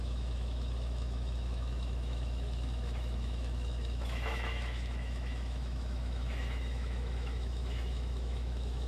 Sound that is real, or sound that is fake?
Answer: fake